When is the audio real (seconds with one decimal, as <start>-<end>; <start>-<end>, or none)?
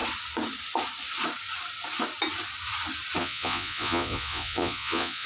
0.0-3.2